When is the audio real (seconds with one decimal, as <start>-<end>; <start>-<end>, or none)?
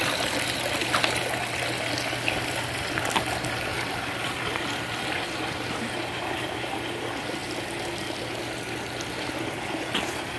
0.0-10.4